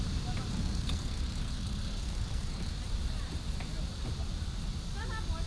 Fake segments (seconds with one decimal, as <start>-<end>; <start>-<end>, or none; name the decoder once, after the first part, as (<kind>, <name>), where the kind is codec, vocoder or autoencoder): 0.5-2.7 (codec, SNAC)